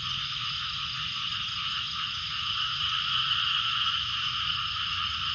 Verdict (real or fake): fake